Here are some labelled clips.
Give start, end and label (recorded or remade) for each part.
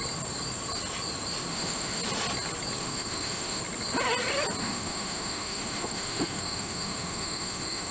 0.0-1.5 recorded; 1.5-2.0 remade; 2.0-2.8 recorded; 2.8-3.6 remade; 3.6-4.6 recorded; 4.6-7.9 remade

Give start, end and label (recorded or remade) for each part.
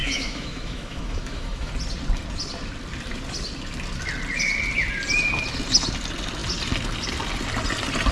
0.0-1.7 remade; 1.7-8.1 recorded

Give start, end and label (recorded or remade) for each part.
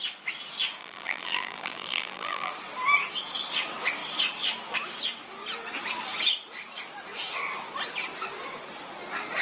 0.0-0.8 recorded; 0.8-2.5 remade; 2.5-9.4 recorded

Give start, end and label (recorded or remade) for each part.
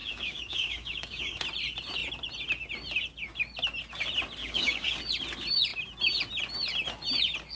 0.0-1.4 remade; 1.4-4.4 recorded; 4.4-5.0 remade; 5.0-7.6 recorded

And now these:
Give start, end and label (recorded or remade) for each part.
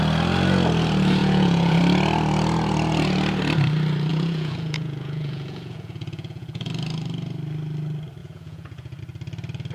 0.0-1.2 recorded; 1.2-1.8 remade; 1.8-4.1 recorded; 4.1-6.7 remade; 6.7-8.2 recorded; 8.2-9.0 remade; 9.0-9.7 recorded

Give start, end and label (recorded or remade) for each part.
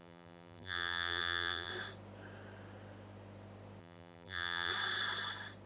0.0-1.7 remade; 1.7-3.8 recorded; 3.8-4.7 remade; 4.7-5.7 recorded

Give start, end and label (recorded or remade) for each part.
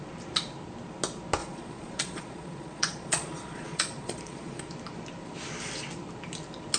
0.0-1.4 recorded; 1.4-4.6 remade; 4.6-6.8 recorded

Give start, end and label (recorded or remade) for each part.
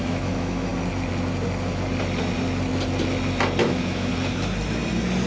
0.0-0.7 remade; 0.7-3.6 recorded; 3.6-4.1 remade; 4.1-5.3 recorded